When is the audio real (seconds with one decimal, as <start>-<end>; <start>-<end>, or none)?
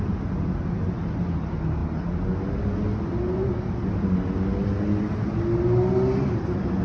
0.0-6.8